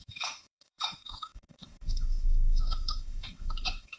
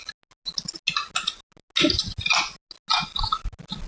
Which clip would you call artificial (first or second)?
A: first